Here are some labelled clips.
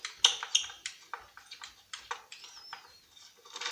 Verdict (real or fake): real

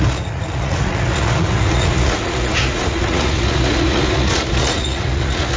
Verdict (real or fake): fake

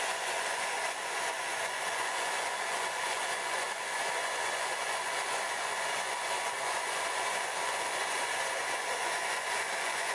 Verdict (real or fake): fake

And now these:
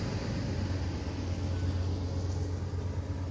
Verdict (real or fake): real